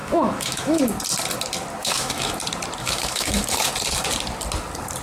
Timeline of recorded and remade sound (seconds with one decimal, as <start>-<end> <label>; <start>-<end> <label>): 0.0-0.8 remade; 0.8-1.8 recorded; 1.8-2.3 remade; 2.3-2.8 recorded; 2.8-3.7 remade; 3.7-5.0 recorded

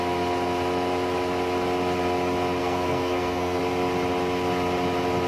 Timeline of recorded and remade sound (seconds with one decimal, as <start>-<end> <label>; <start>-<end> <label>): 0.0-2.6 recorded; 2.6-3.6 remade; 3.6-5.3 recorded

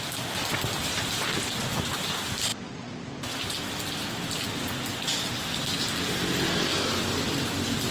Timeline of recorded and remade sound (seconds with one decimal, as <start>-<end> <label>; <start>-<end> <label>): 0.0-7.9 recorded

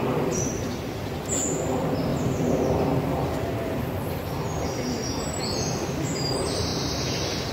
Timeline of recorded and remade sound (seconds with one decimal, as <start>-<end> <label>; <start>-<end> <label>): 0.0-7.5 recorded

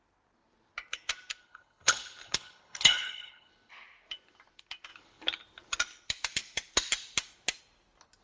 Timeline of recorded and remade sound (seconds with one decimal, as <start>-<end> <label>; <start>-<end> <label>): 0.0-1.4 recorded; 1.4-3.5 remade; 3.5-8.2 recorded